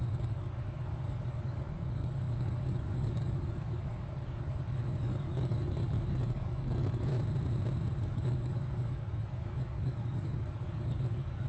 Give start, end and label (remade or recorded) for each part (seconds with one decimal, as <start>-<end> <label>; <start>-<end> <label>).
0.0-7.1 remade; 7.1-8.0 recorded; 8.0-11.5 remade